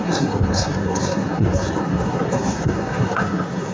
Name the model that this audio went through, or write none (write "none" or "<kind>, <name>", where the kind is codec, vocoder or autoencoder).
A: codec, SNAC